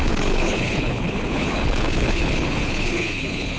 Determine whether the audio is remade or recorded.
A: remade